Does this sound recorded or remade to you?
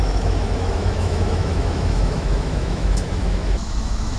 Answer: remade